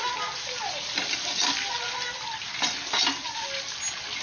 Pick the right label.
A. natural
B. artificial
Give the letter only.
A